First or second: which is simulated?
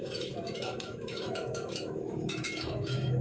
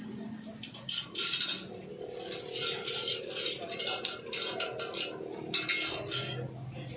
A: first